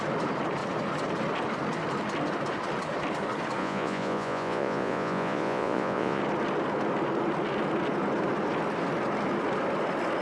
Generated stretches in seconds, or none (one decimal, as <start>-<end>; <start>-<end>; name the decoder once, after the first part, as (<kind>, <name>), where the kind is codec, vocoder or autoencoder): 3.6-6.2 (vocoder, Vocos)